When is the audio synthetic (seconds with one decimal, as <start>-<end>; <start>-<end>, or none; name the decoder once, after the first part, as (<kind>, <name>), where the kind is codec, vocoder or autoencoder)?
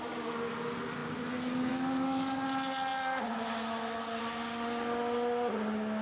none